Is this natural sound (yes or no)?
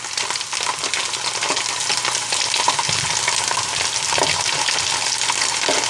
yes